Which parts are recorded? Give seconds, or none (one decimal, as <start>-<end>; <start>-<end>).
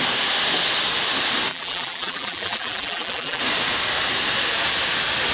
0.0-1.5; 3.4-5.3